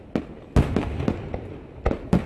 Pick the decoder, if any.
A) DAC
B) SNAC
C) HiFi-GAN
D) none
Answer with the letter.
D